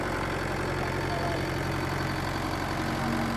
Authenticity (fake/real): fake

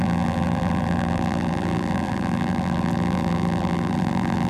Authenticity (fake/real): fake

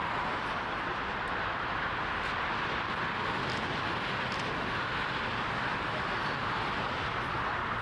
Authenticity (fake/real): real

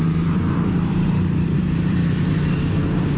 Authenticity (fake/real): fake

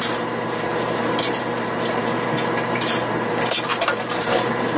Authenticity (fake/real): fake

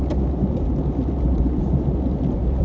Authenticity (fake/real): real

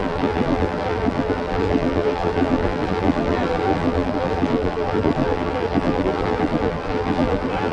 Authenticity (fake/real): fake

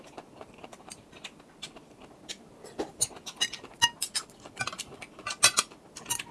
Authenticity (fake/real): real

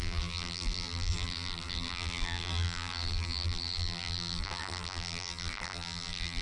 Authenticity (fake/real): fake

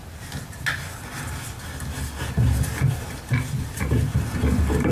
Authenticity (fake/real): real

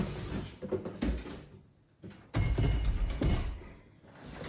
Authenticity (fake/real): real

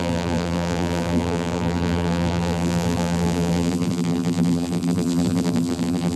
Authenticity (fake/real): fake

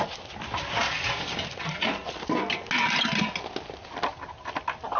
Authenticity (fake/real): real